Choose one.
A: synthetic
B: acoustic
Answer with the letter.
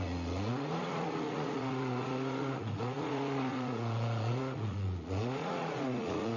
A